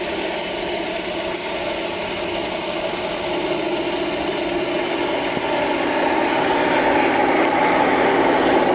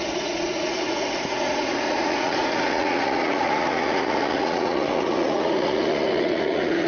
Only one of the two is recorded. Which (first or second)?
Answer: first